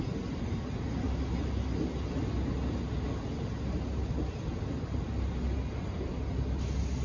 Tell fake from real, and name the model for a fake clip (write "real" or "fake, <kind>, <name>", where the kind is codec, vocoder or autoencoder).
real